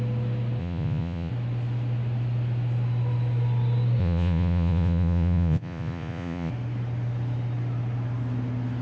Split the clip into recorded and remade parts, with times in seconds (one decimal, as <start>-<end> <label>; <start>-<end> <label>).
0.0-0.6 recorded; 0.6-1.3 remade; 1.3-4.0 recorded; 4.0-6.5 remade; 6.5-8.8 recorded